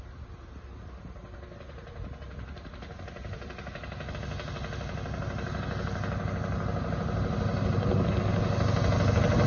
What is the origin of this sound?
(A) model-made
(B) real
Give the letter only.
B